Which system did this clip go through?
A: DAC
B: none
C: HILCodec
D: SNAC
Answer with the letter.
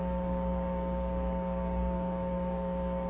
A